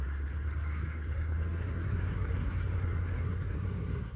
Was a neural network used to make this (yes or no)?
yes